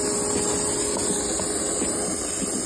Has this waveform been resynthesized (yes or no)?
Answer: no